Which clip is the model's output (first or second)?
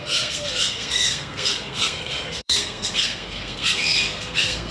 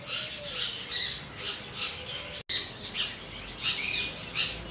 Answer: first